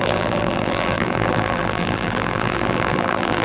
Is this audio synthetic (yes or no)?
yes